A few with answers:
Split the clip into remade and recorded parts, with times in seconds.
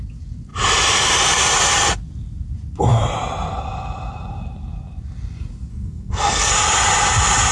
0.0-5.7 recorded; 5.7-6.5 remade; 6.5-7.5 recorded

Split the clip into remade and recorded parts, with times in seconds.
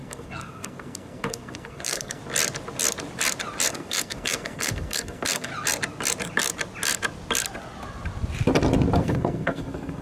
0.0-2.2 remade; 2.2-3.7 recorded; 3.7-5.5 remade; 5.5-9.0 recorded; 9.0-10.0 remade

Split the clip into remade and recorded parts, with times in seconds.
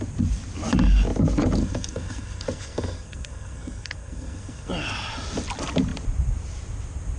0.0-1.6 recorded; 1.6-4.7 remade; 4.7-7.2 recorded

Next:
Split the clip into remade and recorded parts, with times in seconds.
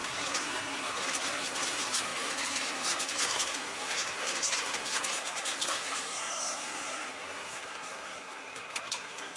0.0-9.4 remade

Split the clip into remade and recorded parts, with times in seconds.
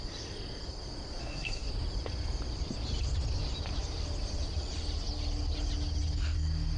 0.0-1.2 recorded; 1.2-1.7 remade; 1.7-6.8 recorded